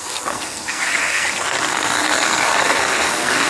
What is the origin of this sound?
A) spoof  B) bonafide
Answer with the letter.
A